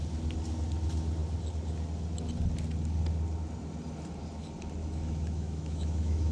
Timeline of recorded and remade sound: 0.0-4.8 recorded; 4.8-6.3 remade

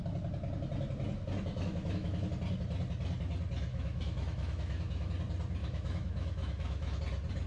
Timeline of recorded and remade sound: 0.0-1.5 recorded; 1.5-2.3 remade; 2.3-3.7 recorded; 3.7-5.1 remade; 5.1-5.6 recorded; 5.6-7.0 remade; 7.0-7.5 recorded

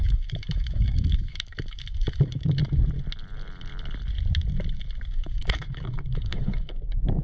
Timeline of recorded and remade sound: 0.0-2.6 remade; 2.6-5.1 recorded; 5.1-7.2 remade

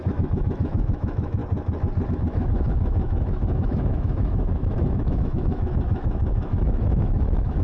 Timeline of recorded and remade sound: 0.0-1.4 remade; 1.4-2.1 recorded; 2.1-7.6 remade

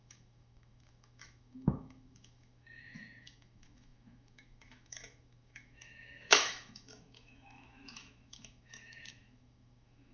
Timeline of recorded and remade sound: 0.0-10.1 remade

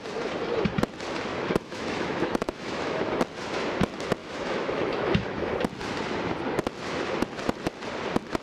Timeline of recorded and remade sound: 0.0-1.3 recorded; 1.3-3.1 remade; 3.1-4.2 recorded; 4.2-5.5 remade; 5.5-8.4 recorded